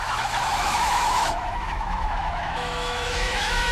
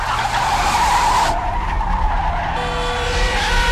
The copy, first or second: first